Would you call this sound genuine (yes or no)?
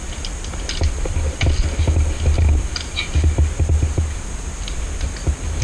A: yes